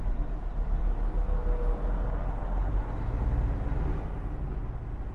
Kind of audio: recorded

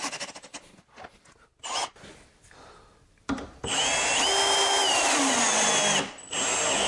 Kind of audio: recorded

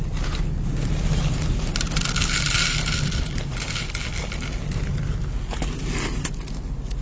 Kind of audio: recorded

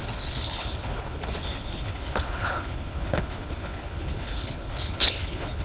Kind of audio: remade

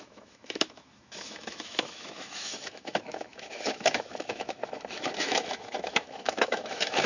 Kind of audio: remade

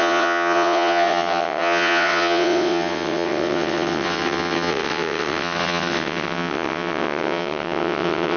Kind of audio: remade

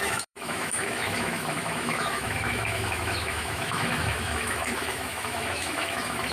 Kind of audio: remade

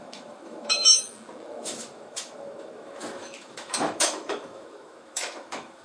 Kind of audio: remade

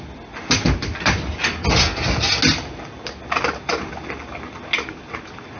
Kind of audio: recorded